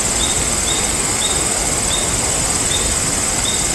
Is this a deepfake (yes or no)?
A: no